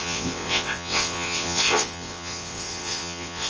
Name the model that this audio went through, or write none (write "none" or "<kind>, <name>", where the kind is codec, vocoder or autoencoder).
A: vocoder, WaveNeXt